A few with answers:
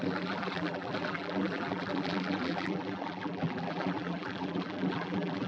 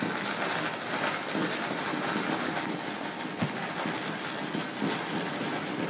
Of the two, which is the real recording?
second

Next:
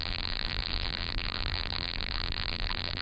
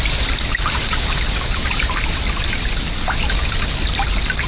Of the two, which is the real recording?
second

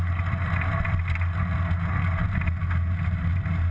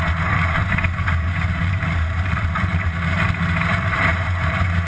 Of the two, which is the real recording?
first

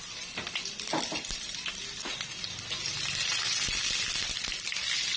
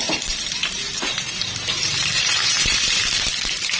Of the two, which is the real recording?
first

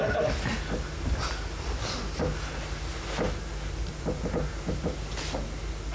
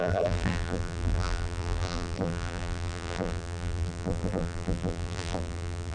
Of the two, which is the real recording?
first